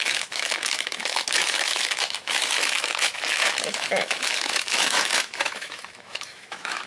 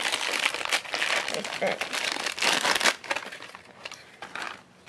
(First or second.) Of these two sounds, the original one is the second